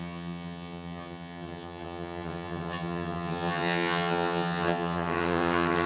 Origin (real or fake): fake